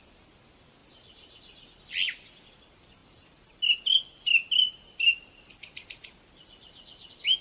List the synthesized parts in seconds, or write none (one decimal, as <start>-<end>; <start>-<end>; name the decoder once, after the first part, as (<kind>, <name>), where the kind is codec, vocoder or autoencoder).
none